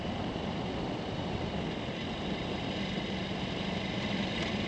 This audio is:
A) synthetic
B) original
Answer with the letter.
B